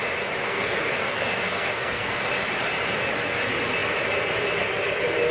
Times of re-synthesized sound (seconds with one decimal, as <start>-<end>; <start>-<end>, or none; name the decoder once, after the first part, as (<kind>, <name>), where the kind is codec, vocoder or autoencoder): 0.4-2.2 (codec, SNAC)